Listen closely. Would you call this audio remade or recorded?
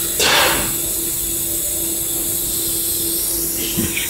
recorded